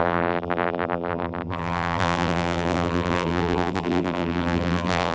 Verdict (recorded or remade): remade